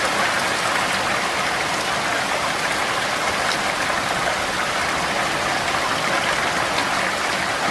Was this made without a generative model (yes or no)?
yes